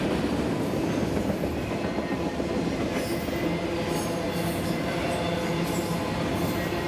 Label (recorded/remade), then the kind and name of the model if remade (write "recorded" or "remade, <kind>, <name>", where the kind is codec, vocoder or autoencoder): recorded